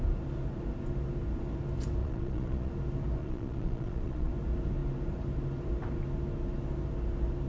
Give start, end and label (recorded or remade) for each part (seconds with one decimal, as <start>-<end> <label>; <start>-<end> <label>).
0.0-2.0 recorded; 2.0-2.7 remade; 2.7-3.2 recorded; 3.2-4.3 remade; 4.3-7.5 recorded